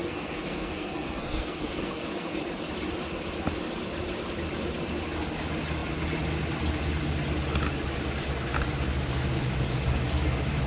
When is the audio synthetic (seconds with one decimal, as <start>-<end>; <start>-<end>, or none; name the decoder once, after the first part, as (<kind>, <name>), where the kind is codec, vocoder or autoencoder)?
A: 0.0-2.4 (codec, SNAC)